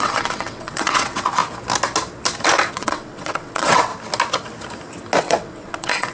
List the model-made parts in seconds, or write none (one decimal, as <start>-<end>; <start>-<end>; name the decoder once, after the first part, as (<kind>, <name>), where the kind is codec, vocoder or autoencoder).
0.0-1.4 (vocoder, WaveNeXt); 2.7-3.9; 5.2-6.1